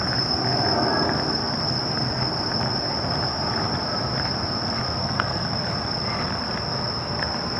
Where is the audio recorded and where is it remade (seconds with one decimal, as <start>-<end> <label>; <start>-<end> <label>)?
0.0-5.0 recorded; 5.0-5.5 remade; 5.5-7.6 recorded